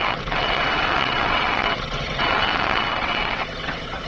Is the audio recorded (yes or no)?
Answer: no